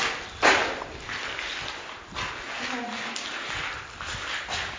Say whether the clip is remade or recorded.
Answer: recorded